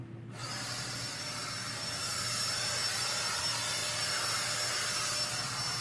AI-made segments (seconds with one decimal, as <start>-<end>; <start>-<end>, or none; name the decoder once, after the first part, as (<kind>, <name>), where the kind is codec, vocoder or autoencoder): 0.4-1.1 (vocoder, BigVGAN v2); 2.0-3.4